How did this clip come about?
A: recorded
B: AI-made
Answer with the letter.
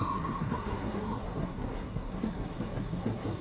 B